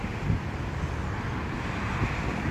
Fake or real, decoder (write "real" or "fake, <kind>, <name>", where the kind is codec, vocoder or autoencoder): real